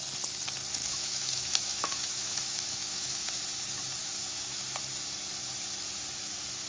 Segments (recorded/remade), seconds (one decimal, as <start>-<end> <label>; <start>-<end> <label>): 0.0-0.8 recorded; 0.8-3.3 remade; 3.3-4.0 recorded; 4.0-4.6 remade; 4.6-6.7 recorded